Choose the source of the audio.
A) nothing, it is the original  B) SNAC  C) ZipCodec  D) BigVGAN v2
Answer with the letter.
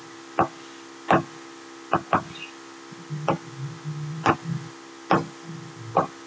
A